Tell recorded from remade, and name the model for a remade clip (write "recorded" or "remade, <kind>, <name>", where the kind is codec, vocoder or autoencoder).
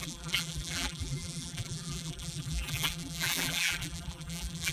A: remade, vocoder, BigVGAN v2